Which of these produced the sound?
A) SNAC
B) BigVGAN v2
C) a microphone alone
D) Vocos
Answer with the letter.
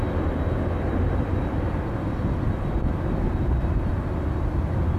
C